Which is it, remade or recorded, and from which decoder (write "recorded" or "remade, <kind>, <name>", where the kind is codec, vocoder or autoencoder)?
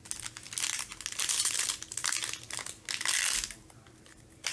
recorded